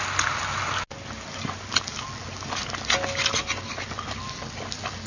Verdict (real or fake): real